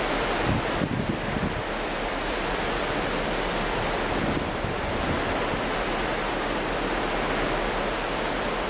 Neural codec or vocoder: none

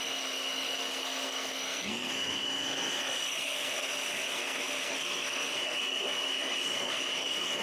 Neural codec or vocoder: codec, SNAC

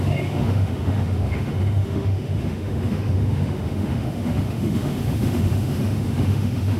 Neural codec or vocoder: autoencoder, DAC-VAE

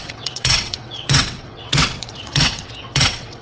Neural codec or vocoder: vocoder, WaveNeXt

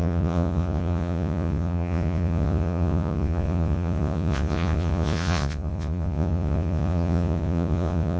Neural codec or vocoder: vocoder, Vocos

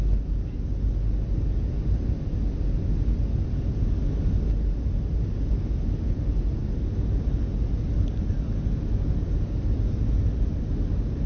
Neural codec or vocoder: none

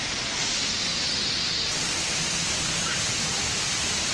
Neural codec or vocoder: none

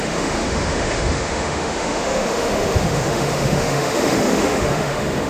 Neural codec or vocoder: autoencoder, DAC-VAE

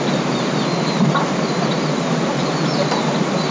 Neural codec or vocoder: none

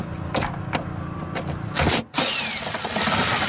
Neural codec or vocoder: none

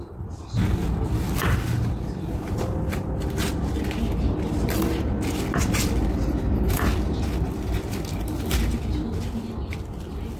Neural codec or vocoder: none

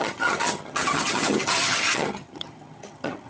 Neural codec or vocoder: vocoder, HiFi-GAN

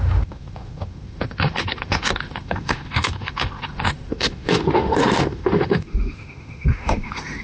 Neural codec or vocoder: autoencoder, DAC-VAE